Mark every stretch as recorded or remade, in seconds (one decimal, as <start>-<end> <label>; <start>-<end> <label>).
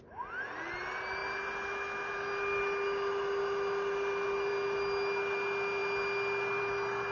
0.0-7.1 recorded